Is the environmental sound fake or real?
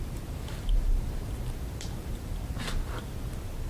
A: fake